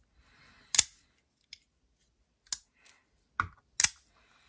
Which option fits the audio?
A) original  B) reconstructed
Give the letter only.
A